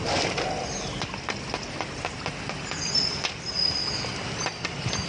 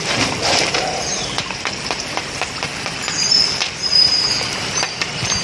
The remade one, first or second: second